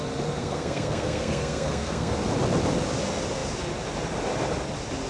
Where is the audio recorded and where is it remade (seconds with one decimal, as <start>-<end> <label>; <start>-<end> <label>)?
0.0-0.4 recorded; 0.4-2.1 remade; 2.1-5.1 recorded